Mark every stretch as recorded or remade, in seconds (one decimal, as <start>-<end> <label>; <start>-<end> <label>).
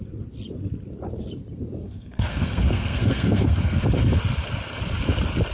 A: 0.0-1.8 recorded; 1.8-3.8 remade; 3.8-5.5 recorded